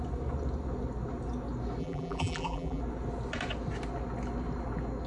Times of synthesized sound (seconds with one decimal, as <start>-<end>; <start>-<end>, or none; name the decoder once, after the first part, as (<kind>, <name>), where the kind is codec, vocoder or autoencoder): 1.8-2.8 (vocoder, BigVGAN v2)